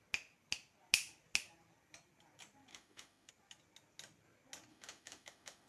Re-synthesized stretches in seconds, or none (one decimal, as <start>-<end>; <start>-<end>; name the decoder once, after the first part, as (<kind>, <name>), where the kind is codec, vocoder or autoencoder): 2.7-3.3 (autoencoder, DAC-VAE); 4.7-5.7